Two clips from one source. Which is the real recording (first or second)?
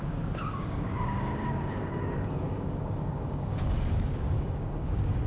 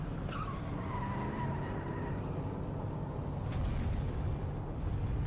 second